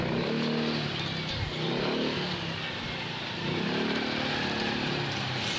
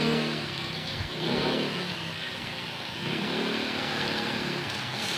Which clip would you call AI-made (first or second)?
second